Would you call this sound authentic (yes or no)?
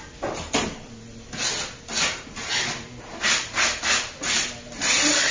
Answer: yes